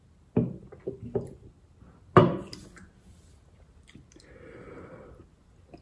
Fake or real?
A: real